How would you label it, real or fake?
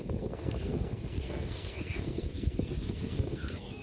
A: fake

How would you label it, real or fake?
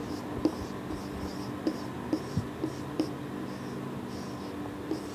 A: real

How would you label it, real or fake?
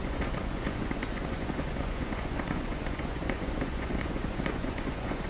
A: fake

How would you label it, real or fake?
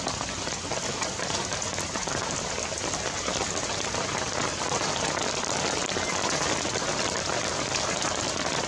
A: real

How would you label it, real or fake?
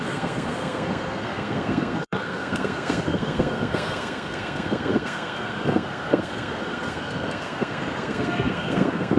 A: fake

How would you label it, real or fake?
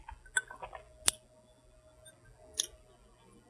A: real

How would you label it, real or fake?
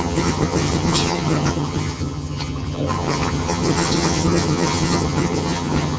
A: fake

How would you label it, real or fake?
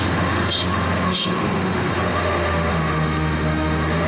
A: fake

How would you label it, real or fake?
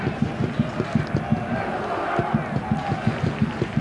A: real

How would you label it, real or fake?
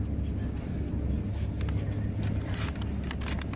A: real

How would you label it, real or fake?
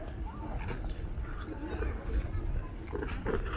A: real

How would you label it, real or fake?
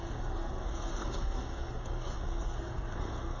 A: fake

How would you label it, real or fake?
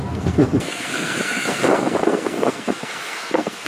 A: fake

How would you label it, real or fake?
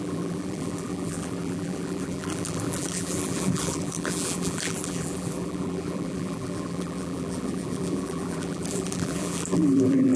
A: fake